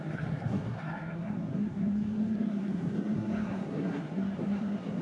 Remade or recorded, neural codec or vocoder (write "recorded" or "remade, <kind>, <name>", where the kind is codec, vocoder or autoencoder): remade, codec, SNAC